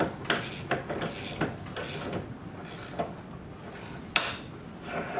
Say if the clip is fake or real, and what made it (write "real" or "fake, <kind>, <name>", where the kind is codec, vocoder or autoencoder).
real